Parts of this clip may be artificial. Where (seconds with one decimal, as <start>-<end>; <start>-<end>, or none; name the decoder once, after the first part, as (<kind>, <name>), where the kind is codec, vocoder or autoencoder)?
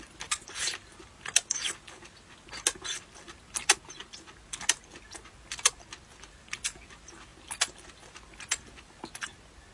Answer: none